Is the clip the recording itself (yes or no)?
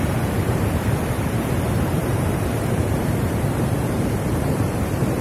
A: no